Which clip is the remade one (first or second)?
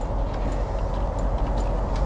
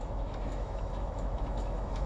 second